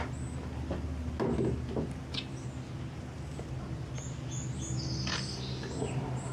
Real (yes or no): yes